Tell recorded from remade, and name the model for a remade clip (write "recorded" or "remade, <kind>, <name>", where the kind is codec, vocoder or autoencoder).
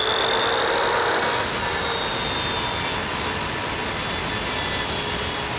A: recorded